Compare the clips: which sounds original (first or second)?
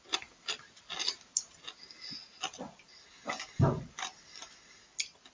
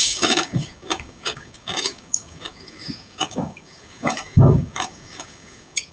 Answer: first